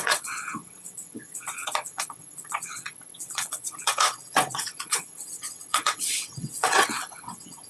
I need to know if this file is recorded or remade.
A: remade